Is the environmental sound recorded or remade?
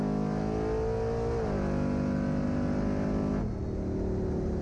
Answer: recorded